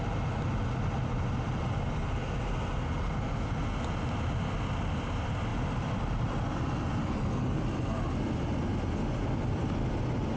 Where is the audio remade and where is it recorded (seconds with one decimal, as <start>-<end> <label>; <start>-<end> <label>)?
0.0-10.4 recorded